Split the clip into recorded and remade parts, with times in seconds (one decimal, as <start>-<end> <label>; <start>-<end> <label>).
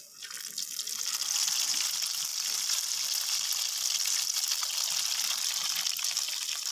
0.0-6.7 recorded